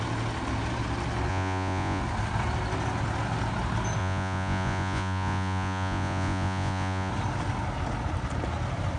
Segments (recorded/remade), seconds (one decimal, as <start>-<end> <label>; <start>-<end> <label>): 0.0-1.3 recorded; 1.3-2.0 remade; 2.0-4.0 recorded; 4.0-7.1 remade; 7.1-9.0 recorded